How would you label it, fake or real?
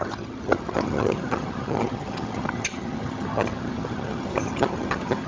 fake